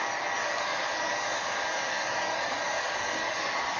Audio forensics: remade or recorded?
remade